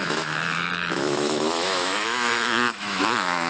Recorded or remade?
remade